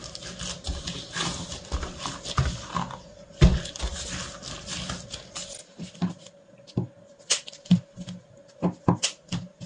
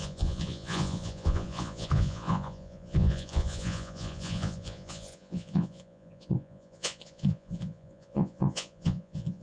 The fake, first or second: second